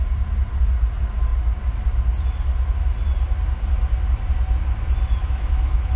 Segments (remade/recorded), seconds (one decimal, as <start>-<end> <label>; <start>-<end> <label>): 0.0-5.2 recorded; 5.2-6.0 remade

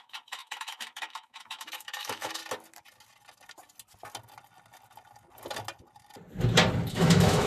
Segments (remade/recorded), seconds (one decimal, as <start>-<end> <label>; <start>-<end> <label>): 0.0-2.4 remade; 2.4-6.9 recorded; 6.9-7.5 remade

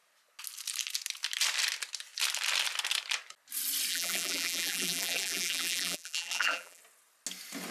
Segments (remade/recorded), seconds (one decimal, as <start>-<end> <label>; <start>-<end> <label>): 0.0-3.9 recorded; 3.9-6.8 remade; 6.8-7.7 recorded

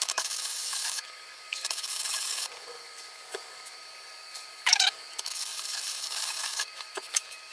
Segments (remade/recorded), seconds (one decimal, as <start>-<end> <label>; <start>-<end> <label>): 0.0-7.5 remade

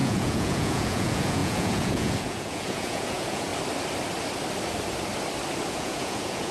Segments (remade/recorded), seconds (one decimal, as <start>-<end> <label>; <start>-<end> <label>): 0.0-3.5 remade; 3.5-5.7 recorded; 5.7-6.5 remade

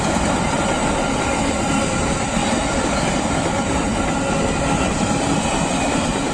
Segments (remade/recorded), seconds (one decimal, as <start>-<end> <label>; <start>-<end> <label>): 0.0-6.3 recorded

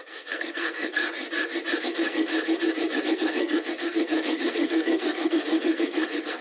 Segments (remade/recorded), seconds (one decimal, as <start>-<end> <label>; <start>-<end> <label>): 0.0-1.0 remade; 1.0-1.8 recorded; 1.8-2.3 remade; 2.3-3.0 recorded; 3.0-6.4 remade